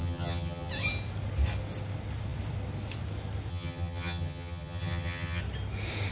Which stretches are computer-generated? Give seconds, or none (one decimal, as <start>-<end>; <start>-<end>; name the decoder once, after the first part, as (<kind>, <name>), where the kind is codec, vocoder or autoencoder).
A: 0.0-0.7 (vocoder, HiFi-GAN); 3.5-5.4